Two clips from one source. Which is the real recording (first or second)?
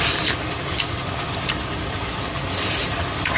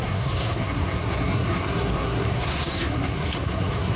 first